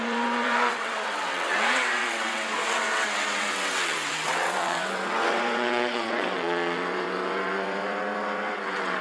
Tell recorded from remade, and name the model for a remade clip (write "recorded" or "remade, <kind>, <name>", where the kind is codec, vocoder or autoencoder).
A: remade, vocoder, WaveNeXt